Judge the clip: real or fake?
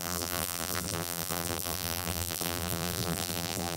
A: fake